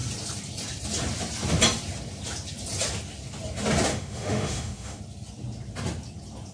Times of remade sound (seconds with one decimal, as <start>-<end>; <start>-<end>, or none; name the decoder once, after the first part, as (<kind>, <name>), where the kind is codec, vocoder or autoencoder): 3.9-5.0 (autoencoder, DAC-VAE)